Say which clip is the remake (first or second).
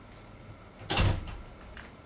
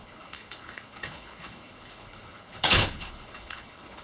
second